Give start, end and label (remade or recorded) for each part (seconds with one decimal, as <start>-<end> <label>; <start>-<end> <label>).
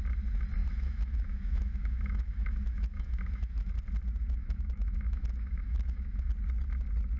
0.0-0.6 recorded; 0.6-3.7 remade; 3.7-4.4 recorded; 4.4-6.3 remade; 6.3-7.2 recorded